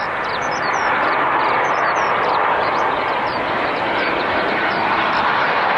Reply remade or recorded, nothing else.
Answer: recorded